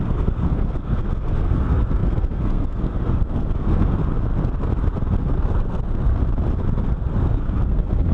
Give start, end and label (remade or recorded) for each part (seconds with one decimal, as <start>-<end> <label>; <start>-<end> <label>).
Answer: 0.0-4.0 remade; 4.0-5.2 recorded; 5.2-6.2 remade; 6.2-6.9 recorded; 6.9-8.1 remade